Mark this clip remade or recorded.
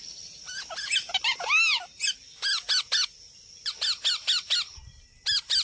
recorded